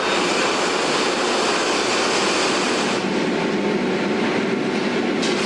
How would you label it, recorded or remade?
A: recorded